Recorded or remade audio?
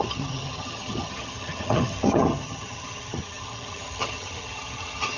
remade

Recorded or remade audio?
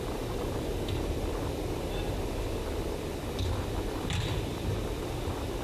recorded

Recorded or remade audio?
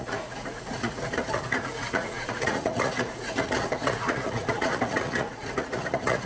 remade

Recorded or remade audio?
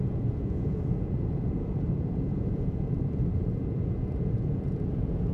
remade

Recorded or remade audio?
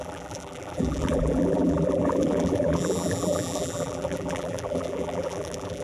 remade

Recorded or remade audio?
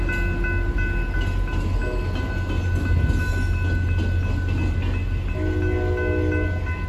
recorded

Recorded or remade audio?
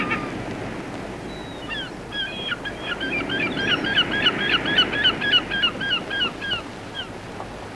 recorded